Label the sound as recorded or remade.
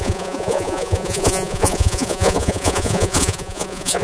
remade